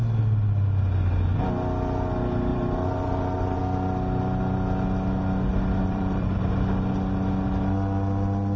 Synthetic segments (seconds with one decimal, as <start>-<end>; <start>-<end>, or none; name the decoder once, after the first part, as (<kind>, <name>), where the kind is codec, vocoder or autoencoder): 2.5-3.6 (vocoder, BigVGAN v2); 5.8-6.4